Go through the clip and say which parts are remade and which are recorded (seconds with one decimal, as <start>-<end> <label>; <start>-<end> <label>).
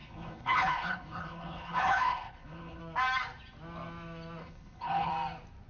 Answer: 0.0-2.8 remade; 2.8-4.4 recorded; 4.4-5.1 remade; 5.1-5.7 recorded